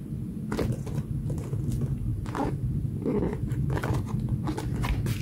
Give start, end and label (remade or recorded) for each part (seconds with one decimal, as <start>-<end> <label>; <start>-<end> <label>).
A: 0.0-5.2 recorded